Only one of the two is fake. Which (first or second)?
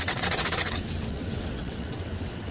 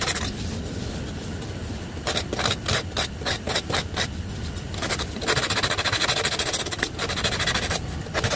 first